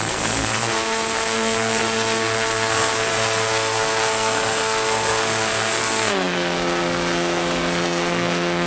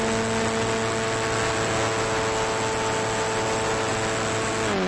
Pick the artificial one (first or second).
first